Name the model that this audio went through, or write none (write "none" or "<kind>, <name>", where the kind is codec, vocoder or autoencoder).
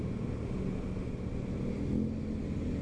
none